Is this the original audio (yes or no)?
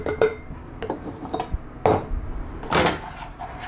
yes